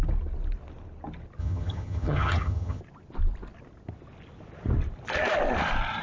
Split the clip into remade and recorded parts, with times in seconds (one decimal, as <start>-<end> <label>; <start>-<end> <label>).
0.0-1.4 recorded; 1.4-2.8 remade; 2.8-6.0 recorded